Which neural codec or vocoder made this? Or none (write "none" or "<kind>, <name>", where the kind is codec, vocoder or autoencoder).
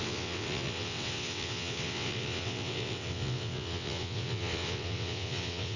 vocoder, WaveNeXt